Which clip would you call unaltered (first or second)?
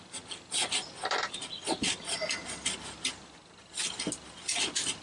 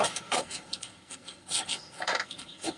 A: first